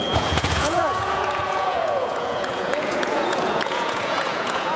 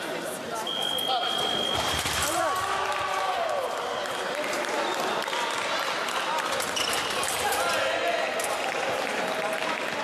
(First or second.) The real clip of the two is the second